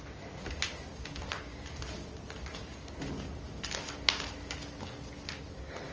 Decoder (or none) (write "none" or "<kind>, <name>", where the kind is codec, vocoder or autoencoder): none